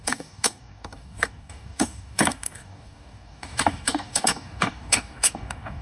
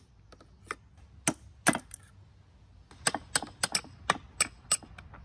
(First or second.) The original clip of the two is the second